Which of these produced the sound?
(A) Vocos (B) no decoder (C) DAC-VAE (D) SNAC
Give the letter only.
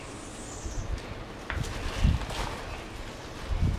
B